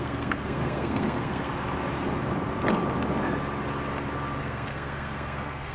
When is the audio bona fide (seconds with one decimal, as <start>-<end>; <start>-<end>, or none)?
1.5-4.4